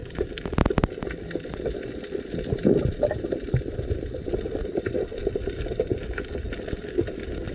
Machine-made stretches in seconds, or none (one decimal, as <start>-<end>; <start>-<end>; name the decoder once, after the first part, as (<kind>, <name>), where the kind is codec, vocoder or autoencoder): none